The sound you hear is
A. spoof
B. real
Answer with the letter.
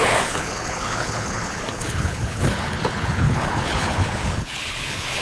A